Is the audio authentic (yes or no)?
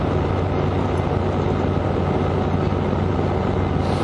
yes